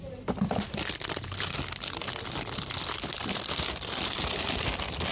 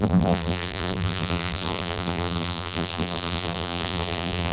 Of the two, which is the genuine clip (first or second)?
first